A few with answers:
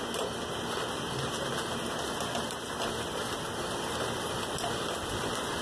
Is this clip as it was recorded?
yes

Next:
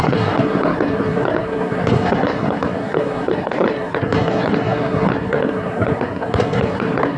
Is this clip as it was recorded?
no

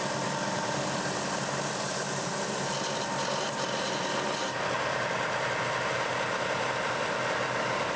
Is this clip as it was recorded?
yes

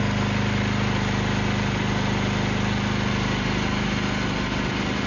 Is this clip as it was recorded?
yes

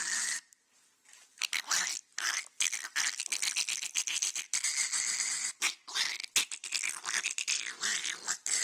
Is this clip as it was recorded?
yes